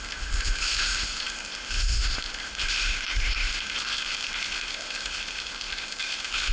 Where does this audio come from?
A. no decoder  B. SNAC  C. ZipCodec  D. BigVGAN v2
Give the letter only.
C